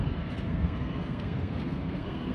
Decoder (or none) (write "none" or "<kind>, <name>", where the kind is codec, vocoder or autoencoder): codec, SNAC